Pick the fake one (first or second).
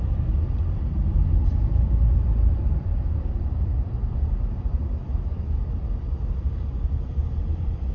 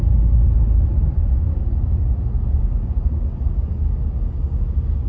first